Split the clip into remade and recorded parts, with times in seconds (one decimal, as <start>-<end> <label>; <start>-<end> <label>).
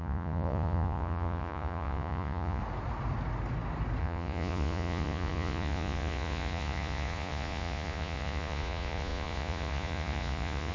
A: 0.0-2.6 remade; 2.6-4.0 recorded; 4.0-10.7 remade